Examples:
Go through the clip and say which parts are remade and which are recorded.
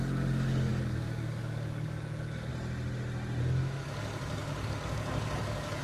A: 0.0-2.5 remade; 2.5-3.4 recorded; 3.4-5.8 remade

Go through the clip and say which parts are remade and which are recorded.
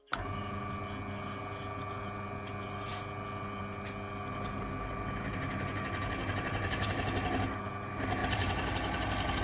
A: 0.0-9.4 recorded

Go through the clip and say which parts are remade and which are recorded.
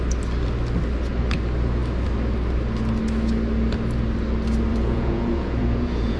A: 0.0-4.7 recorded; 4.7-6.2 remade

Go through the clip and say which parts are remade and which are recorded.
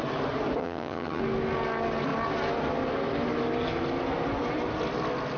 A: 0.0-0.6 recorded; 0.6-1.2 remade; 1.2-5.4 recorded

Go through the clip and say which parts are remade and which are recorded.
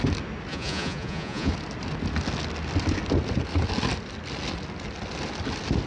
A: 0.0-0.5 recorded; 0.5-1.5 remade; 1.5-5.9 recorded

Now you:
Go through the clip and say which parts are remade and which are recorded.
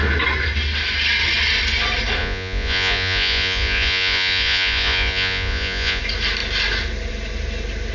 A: 0.0-2.2 recorded; 2.2-6.0 remade; 6.0-7.9 recorded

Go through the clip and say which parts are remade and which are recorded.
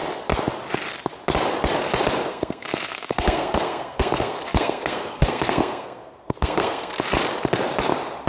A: 0.0-2.3 recorded; 2.3-7.0 remade; 7.0-8.3 recorded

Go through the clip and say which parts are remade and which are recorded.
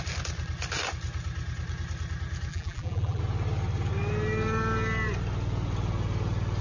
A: 0.0-2.5 recorded; 2.5-3.2 remade; 3.2-6.6 recorded